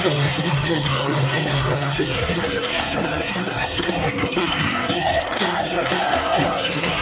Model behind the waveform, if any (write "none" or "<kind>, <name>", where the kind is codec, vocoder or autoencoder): codec, SNAC